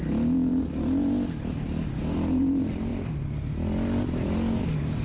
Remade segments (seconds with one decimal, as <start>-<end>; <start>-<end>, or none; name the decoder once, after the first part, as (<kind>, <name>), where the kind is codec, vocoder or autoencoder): none